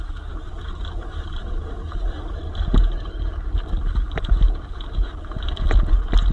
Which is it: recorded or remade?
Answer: recorded